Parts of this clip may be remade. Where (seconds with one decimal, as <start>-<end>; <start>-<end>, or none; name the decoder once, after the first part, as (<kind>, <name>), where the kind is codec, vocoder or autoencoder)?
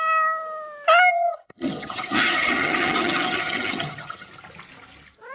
1.1-4.3 (vocoder, HiFi-GAN)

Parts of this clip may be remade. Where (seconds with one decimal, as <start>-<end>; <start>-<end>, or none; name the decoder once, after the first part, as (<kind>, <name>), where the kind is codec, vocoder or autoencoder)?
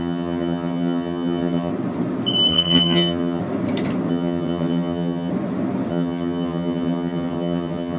0.0-1.7 (vocoder, HiFi-GAN); 2.5-3.4; 4.1-5.3; 5.9-8.0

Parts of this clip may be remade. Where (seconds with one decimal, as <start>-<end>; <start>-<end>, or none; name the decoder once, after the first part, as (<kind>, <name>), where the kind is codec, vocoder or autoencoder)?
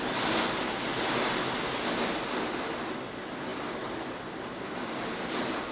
none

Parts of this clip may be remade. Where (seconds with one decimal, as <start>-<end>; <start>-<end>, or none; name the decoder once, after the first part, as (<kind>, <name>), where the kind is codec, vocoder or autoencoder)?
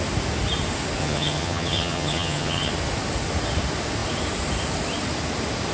1.0-2.7 (vocoder, HiFi-GAN)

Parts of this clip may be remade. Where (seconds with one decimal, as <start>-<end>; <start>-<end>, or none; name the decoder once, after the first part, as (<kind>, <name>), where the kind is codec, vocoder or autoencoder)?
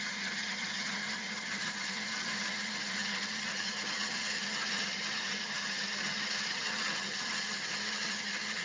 0.0-8.6 (vocoder, HiFi-GAN)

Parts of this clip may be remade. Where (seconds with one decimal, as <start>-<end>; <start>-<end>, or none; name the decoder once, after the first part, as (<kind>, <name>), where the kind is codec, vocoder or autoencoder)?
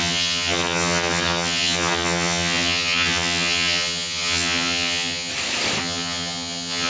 0.0-5.3 (vocoder, HiFi-GAN); 5.8-6.9